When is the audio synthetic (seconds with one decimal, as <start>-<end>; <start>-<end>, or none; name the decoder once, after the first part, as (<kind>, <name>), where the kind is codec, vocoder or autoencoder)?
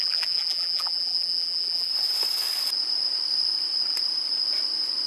0.0-1.9 (vocoder, BigVGAN v2)